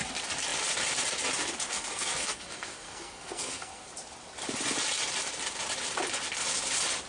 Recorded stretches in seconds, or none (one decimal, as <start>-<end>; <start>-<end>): 0.0-1.7; 3.9-7.1